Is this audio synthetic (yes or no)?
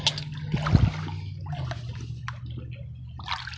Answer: no